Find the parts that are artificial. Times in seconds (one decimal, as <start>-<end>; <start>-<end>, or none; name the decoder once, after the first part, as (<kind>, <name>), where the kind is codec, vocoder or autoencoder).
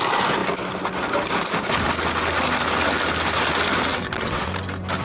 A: 3.9-4.5 (vocoder, WaveNeXt)